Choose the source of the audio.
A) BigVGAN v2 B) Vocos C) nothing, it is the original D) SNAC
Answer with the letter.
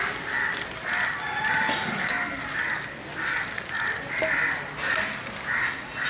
C